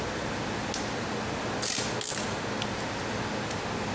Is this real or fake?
real